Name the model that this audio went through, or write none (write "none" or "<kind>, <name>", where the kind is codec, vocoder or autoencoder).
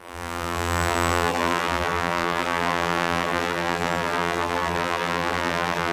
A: vocoder, BigVGAN v2